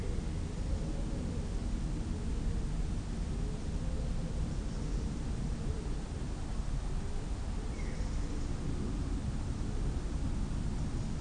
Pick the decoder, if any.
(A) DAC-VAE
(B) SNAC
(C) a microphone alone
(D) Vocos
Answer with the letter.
C